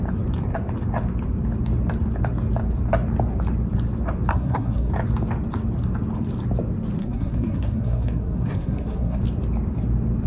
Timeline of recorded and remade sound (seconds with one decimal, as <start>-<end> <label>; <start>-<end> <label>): 0.0-4.3 recorded; 4.3-4.9 remade; 4.9-7.0 recorded; 7.0-9.2 remade; 9.2-10.3 recorded